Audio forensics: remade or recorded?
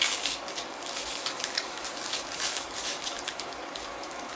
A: remade